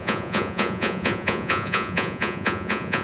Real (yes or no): no